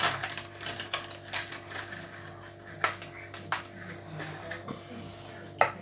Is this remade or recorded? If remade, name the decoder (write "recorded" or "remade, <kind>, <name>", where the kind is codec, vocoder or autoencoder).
recorded